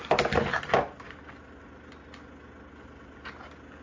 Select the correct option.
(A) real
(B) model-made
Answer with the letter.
A